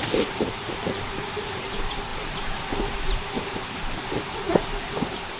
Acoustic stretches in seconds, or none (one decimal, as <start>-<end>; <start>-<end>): 2.1-3.1